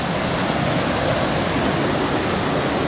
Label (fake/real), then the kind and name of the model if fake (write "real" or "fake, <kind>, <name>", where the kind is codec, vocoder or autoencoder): real